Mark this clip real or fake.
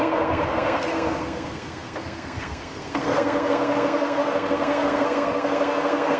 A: fake